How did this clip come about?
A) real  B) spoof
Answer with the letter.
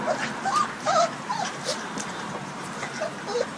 B